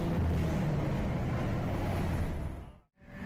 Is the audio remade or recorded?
recorded